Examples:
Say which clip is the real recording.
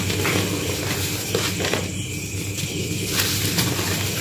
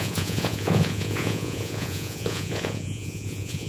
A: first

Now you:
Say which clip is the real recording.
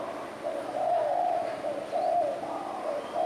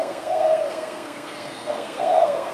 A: first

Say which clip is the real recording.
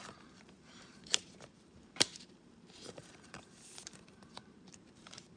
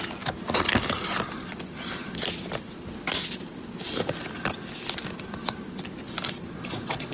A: second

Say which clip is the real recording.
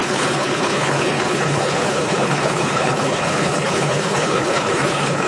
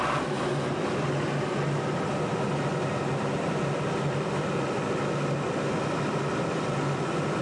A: second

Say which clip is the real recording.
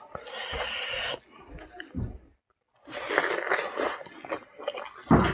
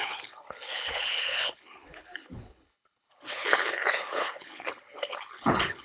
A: first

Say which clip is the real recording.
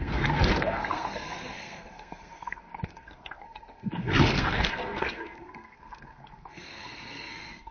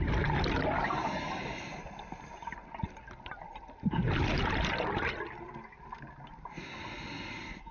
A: second